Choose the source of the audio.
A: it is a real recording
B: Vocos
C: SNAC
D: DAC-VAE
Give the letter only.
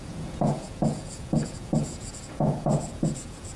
B